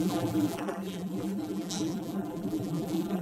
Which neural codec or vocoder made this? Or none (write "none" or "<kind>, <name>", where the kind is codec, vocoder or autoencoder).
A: vocoder, BigVGAN v2